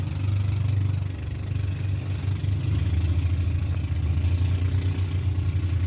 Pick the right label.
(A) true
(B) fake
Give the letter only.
A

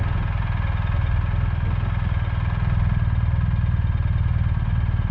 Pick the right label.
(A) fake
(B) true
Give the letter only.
B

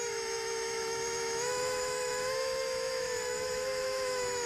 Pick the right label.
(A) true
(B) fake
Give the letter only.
B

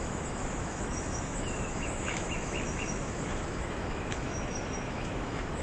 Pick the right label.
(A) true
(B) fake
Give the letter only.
B